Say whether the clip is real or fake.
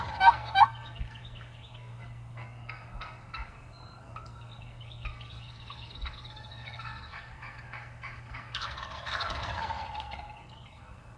fake